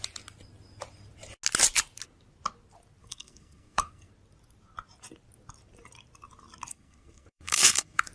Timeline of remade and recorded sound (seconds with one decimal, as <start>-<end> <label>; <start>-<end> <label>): 0.0-3.0 recorded; 3.0-4.1 remade; 4.1-6.7 recorded; 6.7-8.1 remade